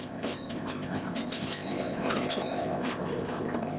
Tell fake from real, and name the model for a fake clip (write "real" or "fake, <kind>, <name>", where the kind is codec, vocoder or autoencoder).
fake, codec, ZipCodec